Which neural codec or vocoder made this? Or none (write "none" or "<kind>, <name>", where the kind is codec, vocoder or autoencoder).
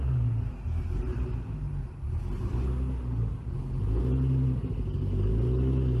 none